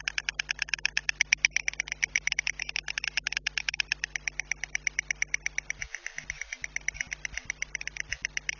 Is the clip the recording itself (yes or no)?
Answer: yes